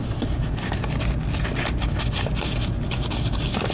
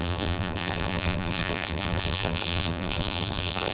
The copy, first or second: second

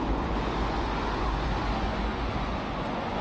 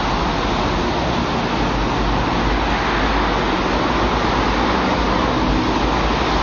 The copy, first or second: first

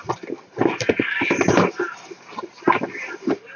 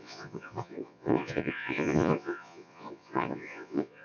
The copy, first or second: second